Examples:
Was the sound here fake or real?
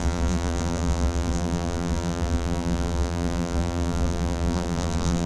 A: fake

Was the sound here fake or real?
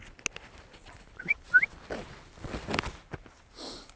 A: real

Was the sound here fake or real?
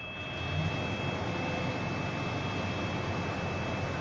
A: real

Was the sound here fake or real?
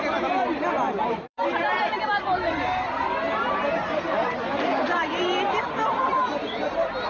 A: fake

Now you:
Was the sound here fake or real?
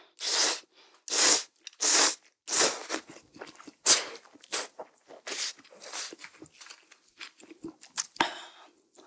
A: real